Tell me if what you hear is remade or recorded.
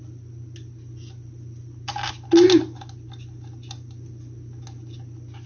recorded